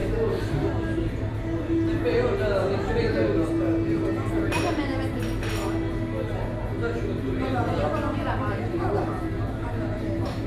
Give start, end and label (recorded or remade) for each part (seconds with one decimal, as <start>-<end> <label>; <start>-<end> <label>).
0.0-4.3 recorded; 4.3-4.9 remade; 4.9-9.2 recorded; 9.2-10.5 remade